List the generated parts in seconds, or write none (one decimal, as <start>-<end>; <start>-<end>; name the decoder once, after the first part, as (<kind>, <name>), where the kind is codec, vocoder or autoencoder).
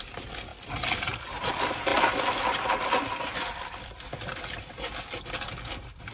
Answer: none